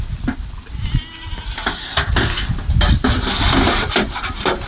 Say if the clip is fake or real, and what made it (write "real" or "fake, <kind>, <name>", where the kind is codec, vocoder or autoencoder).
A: real